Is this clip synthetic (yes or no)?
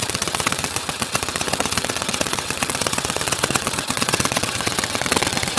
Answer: yes